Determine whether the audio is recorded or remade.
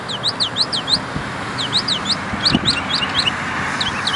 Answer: recorded